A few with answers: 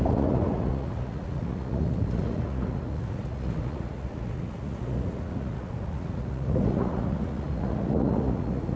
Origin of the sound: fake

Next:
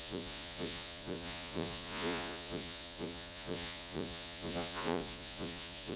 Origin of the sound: fake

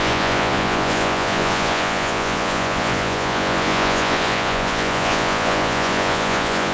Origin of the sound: fake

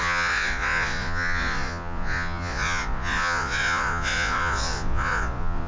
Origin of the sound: fake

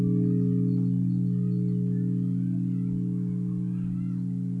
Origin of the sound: real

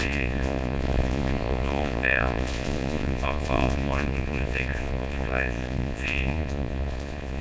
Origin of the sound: fake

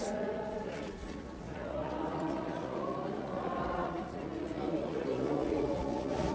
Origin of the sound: fake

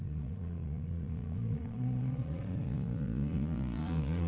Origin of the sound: fake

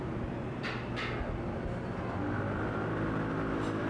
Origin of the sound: real